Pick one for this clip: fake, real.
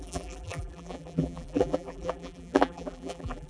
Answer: fake